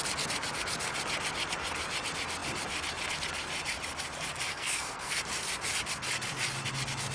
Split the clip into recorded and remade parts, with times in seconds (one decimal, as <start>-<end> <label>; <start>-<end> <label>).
0.0-4.5 recorded; 4.5-5.2 remade; 5.2-7.1 recorded